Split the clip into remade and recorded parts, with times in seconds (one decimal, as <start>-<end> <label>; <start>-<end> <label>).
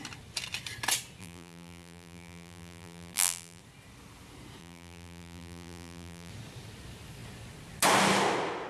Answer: 0.0-1.2 recorded; 1.2-3.6 remade; 3.6-4.6 recorded; 4.6-6.3 remade; 6.3-8.7 recorded